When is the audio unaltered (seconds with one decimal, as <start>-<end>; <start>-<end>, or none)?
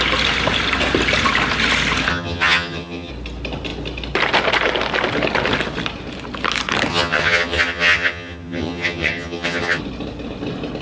0.0-2.1; 3.1-6.9; 9.8-10.8